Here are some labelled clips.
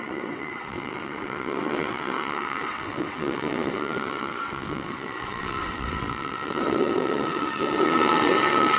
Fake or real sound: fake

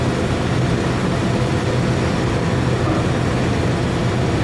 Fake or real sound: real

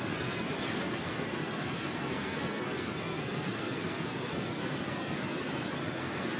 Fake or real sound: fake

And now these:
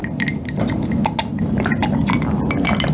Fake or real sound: real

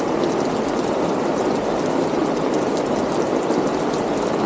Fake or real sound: real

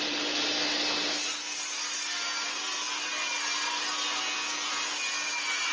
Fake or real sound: real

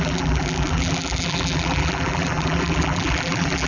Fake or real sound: fake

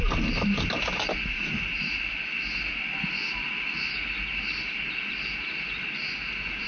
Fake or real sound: real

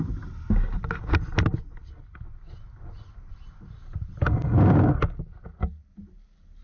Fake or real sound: real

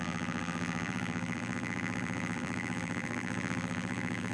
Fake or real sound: fake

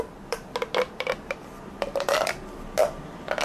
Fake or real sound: real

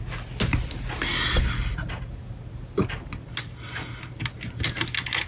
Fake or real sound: real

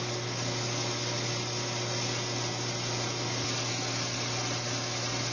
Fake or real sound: real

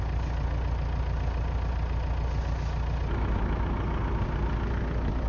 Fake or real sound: real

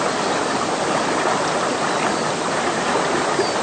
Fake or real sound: real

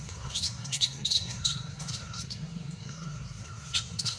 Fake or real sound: fake